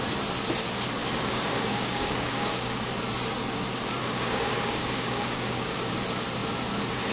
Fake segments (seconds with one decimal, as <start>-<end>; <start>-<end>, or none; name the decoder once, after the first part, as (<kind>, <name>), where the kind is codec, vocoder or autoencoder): 1.0-2.9 (codec, DAC); 4.0-5.9